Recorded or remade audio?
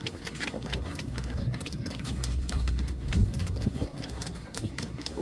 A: remade